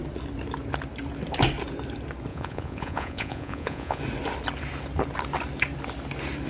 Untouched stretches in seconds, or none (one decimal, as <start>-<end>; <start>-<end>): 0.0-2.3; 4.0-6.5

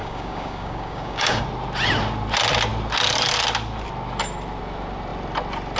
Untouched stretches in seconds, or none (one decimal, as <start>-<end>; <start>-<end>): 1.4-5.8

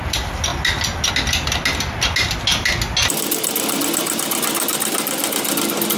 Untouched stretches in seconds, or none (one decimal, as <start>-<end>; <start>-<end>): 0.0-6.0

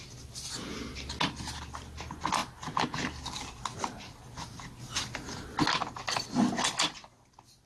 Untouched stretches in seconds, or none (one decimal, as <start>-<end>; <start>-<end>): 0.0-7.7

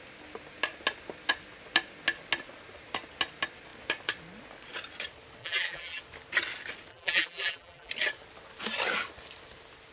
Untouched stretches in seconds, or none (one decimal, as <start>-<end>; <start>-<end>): 0.0-5.4; 6.0-6.9; 7.9-9.9

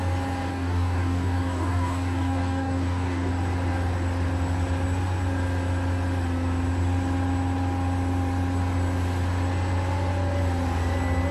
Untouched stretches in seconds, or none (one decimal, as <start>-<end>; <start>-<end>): 0.0-0.5; 3.3-11.3

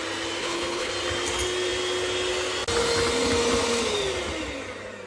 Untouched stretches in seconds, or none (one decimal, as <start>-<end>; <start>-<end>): 0.0-0.4; 0.9-5.1